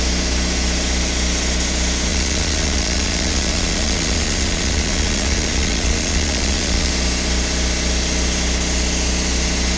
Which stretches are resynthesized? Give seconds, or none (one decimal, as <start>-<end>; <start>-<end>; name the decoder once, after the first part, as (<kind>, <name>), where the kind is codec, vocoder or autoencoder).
2.1-6.9 (vocoder, Vocos)